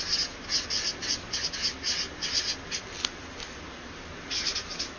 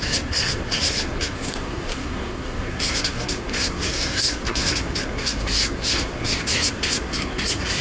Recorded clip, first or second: first